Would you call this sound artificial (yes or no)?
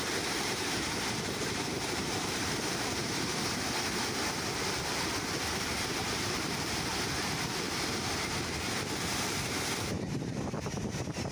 yes